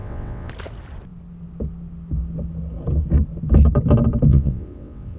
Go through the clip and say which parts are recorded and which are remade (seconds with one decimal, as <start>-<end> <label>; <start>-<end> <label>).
0.0-0.5 remade; 0.5-4.3 recorded; 4.3-5.2 remade